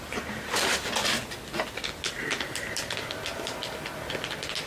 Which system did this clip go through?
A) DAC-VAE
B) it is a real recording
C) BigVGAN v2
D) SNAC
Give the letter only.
B